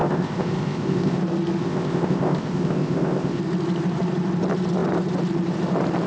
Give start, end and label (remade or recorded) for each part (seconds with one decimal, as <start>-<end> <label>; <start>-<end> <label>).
0.0-1.2 remade; 1.2-1.6 recorded; 1.6-3.4 remade; 3.4-6.1 recorded